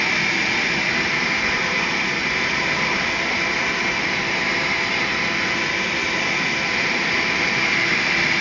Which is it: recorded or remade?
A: recorded